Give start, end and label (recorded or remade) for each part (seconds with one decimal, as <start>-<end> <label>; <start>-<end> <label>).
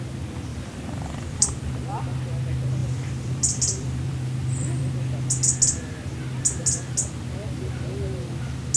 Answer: 0.0-0.5 recorded; 0.5-2.0 remade; 2.0-2.8 recorded; 2.8-4.9 remade; 4.9-8.8 recorded